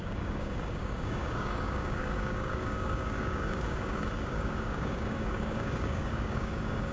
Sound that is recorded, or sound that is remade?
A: remade